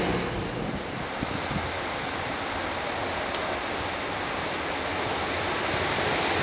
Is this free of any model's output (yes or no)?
yes